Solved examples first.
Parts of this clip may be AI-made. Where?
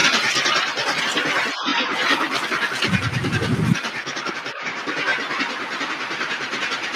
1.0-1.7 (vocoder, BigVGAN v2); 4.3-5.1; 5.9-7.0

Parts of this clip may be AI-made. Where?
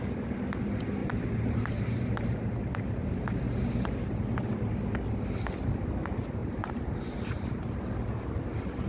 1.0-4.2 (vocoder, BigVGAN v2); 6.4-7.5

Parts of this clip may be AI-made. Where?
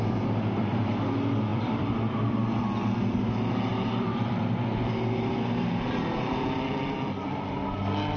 1.5-2.6 (vocoder, BigVGAN v2); 3.7-4.4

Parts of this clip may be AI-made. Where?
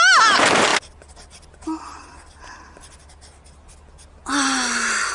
none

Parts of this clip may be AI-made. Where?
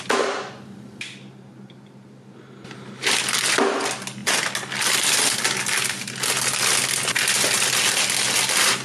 none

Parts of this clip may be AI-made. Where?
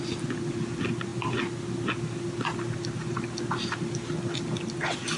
none